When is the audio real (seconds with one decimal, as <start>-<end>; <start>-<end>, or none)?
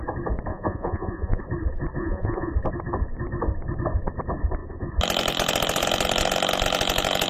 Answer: 0.0-0.5; 1.4-2.0; 2.5-7.3